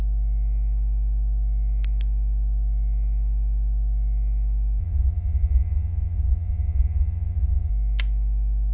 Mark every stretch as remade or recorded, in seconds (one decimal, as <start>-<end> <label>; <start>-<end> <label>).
0.0-4.8 recorded; 4.8-7.7 remade; 7.7-8.7 recorded